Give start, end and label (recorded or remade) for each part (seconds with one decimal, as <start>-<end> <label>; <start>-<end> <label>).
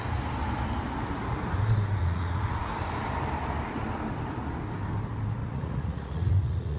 0.0-2.0 recorded; 2.0-2.7 remade; 2.7-5.4 recorded; 5.4-6.8 remade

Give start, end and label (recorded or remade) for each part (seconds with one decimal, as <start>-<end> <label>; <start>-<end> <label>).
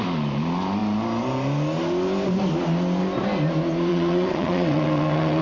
0.0-3.9 recorded; 3.9-5.4 remade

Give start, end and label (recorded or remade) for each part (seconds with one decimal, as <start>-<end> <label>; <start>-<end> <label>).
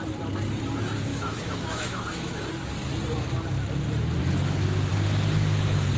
0.0-1.1 recorded; 1.1-2.4 remade; 2.4-4.2 recorded; 4.2-4.9 remade; 4.9-6.0 recorded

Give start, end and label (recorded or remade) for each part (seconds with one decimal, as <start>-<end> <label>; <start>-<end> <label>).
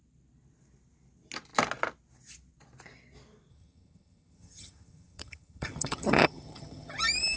0.0-3.5 recorded; 3.5-7.0 remade; 7.0-7.4 recorded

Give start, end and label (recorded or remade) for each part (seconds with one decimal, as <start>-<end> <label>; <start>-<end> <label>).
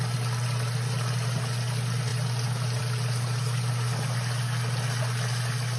0.0-5.8 recorded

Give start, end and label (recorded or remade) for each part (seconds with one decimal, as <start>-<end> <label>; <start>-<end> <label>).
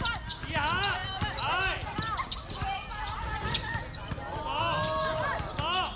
0.0-6.0 recorded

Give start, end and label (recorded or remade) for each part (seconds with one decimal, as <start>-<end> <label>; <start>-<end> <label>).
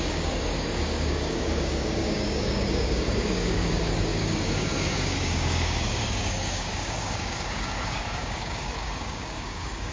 0.0-9.9 remade